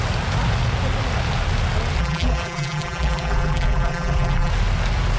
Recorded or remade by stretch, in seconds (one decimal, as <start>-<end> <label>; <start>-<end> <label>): 0.0-2.0 recorded; 2.0-4.5 remade; 4.5-5.2 recorded